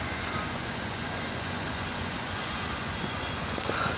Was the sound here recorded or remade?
remade